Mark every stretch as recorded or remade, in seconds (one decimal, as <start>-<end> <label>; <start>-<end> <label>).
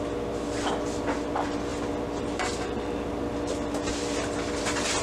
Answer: 0.0-5.0 recorded